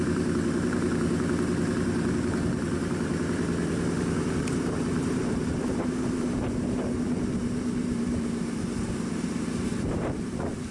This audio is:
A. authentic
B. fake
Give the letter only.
B